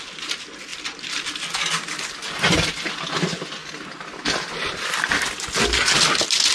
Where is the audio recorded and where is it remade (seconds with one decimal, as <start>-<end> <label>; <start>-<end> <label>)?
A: 0.0-6.5 recorded